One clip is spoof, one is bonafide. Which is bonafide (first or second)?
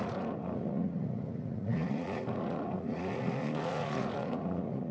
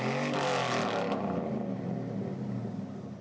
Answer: second